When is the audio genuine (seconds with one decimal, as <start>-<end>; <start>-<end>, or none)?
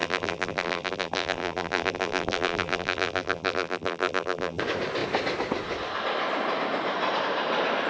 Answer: 4.6-7.9